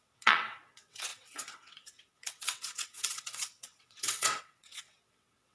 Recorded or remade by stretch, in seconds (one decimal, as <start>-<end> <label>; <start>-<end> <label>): 0.0-5.5 remade